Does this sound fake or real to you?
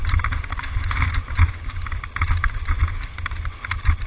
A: real